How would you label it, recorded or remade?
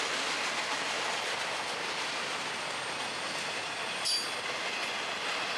recorded